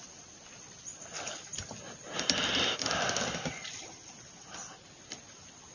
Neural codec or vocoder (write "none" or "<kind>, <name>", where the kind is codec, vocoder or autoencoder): none